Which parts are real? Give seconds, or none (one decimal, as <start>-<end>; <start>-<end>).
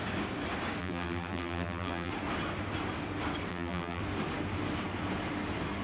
0.0-0.8; 2.1-3.5; 4.0-5.8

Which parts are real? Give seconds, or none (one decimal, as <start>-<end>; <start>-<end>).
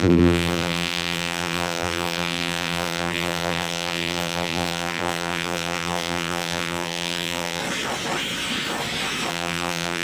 7.6-9.3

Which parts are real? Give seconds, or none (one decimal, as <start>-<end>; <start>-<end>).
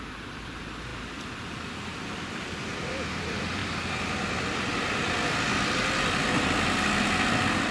0.9-2.1; 3.6-7.7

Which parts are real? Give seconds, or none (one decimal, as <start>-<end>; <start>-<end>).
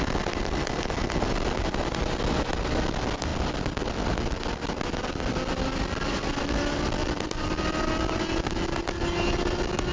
0.0-7.0; 8.2-9.9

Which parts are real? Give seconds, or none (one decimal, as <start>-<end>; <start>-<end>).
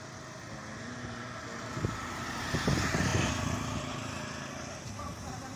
0.0-5.6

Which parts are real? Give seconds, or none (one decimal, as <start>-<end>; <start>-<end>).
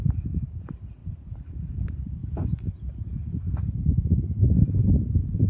0.0-1.0; 1.7-5.5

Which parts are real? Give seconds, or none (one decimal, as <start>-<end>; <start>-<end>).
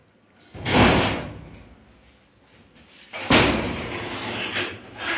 1.0-3.1; 3.9-5.2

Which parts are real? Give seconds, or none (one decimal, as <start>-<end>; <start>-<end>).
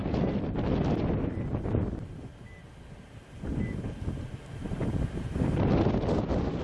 0.0-2.6; 4.7-6.6